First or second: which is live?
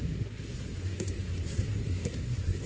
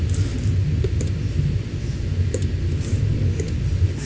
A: second